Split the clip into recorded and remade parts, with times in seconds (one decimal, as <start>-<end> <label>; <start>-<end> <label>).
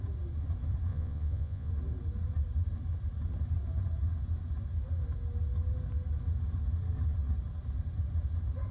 0.0-0.9 recorded; 0.9-1.7 remade; 1.7-8.7 recorded